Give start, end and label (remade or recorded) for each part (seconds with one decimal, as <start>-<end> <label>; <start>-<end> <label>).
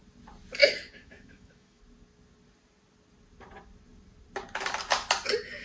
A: 0.0-0.6 recorded; 0.6-1.8 remade; 1.8-5.6 recorded